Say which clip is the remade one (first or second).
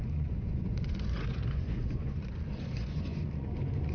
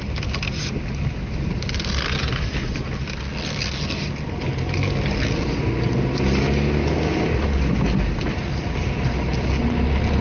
first